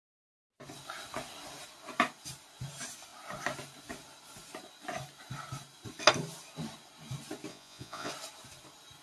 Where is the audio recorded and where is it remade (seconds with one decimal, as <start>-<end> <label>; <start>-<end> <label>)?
0.0-7.5 recorded; 7.5-8.1 remade; 8.1-9.0 recorded